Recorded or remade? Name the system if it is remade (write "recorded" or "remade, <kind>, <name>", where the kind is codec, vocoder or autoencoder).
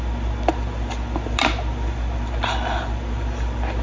recorded